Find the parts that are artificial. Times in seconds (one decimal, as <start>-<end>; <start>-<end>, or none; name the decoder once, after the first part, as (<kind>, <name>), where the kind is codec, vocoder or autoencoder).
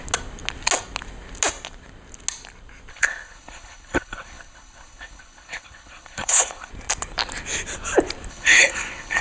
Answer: 2.9-6.7 (codec, HILCodec); 8.3-9.2